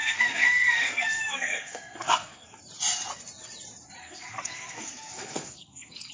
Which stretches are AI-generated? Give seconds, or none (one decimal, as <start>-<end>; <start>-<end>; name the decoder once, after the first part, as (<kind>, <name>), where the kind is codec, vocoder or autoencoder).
0.0-2.6 (codec, SNAC); 4.0-6.1